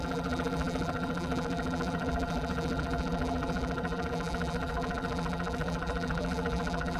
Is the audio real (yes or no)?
no